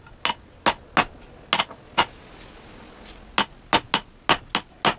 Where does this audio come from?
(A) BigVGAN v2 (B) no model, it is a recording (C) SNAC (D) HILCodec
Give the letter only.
B